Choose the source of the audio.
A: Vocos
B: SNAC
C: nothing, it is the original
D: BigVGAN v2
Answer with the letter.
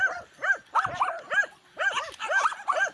D